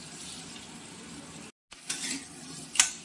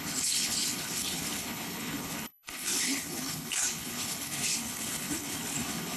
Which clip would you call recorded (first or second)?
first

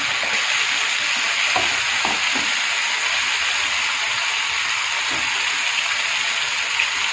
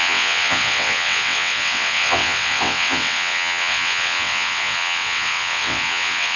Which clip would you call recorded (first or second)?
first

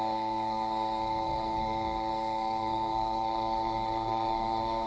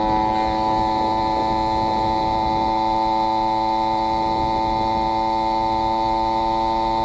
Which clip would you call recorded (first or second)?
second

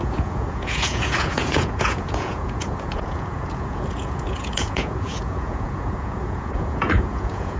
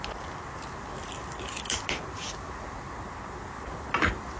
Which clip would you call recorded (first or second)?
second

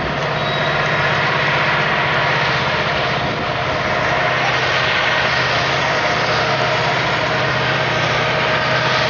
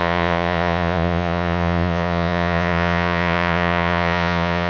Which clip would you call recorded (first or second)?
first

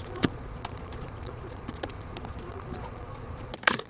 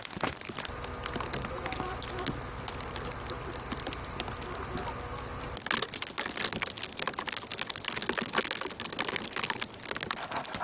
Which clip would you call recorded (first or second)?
second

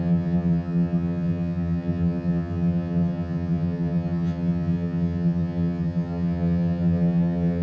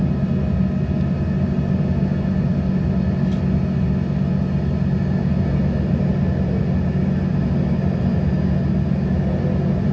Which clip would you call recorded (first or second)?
second